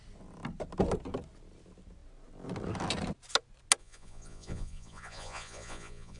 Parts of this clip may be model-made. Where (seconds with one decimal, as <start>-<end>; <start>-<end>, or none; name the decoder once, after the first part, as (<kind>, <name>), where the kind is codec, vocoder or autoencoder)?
3.8-6.2 (vocoder, Vocos)